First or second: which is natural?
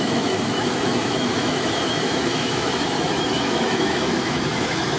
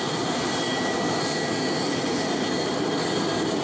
second